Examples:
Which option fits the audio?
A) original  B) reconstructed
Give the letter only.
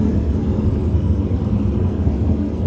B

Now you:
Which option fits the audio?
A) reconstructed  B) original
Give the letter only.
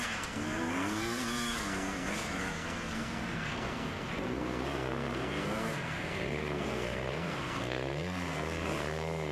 A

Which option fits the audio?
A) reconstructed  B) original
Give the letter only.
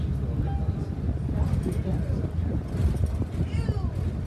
B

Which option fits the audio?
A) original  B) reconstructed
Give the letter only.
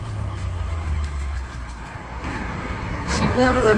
B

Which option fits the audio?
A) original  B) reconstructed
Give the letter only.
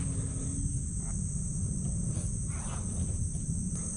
A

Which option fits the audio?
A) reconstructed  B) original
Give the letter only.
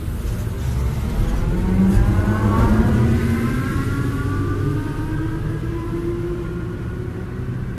B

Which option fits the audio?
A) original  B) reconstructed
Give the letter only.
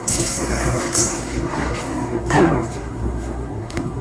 B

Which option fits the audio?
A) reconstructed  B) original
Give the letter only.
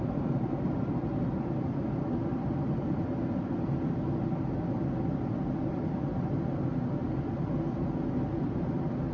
B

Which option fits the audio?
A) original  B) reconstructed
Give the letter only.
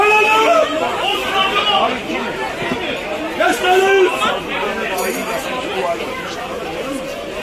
A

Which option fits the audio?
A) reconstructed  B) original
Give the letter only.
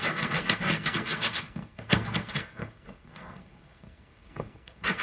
A